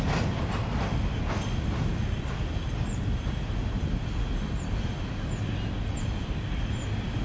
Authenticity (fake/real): real